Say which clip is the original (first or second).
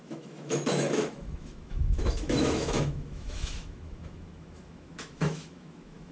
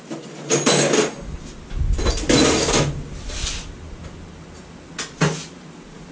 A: second